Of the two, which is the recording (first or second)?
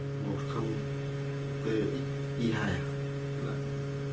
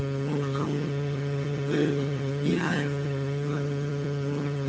first